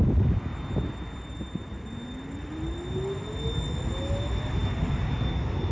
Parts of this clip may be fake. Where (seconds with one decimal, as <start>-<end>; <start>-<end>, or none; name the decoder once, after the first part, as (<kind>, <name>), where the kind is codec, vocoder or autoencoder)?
none